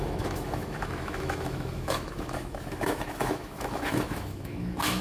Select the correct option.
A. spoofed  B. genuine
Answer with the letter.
A